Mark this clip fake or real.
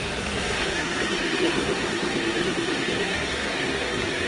fake